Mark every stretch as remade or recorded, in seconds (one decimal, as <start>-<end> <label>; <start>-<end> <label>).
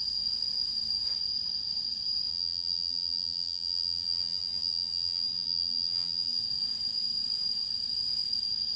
0.0-2.3 recorded; 2.3-6.4 remade; 6.4-8.8 recorded